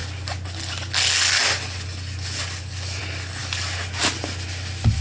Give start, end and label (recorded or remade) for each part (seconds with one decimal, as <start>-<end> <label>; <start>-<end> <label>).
0.0-5.0 recorded